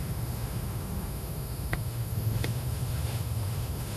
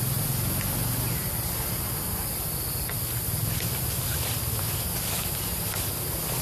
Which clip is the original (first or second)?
second